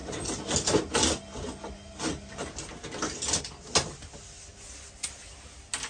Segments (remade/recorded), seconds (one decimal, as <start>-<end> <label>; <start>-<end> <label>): 0.0-5.9 recorded